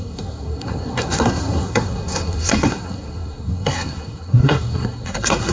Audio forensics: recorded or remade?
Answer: remade